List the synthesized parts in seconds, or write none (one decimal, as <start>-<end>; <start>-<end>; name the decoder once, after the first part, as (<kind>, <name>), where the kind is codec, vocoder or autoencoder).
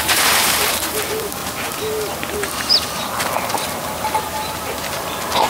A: 0.0-1.4 (vocoder, BigVGAN v2); 4.2-5.5